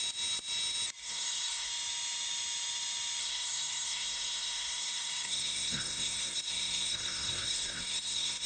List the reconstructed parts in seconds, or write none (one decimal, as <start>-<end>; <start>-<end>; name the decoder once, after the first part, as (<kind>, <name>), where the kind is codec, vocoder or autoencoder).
1.0-1.7 (codec, SNAC); 3.2-8.5